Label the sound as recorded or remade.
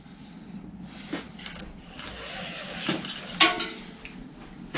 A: recorded